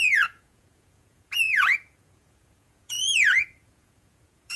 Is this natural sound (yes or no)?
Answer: no